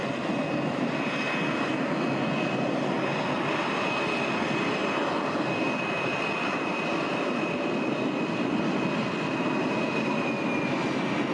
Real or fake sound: real